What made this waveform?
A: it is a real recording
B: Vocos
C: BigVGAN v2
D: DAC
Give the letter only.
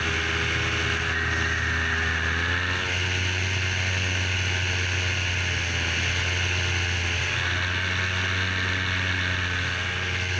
A